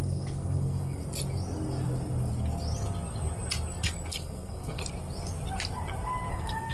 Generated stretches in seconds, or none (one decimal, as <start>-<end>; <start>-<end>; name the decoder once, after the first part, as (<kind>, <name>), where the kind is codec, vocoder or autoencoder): 0.0-1.0 (codec, SNAC); 4.1-4.8; 6.3-6.7